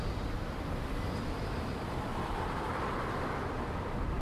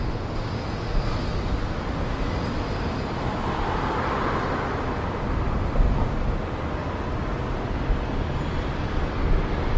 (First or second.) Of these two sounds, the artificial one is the first